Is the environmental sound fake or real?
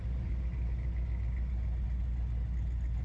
real